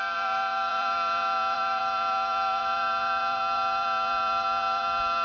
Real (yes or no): no